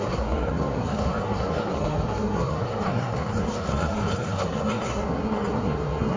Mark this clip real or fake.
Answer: fake